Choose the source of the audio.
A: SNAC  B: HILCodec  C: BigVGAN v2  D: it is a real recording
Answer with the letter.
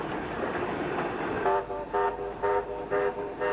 D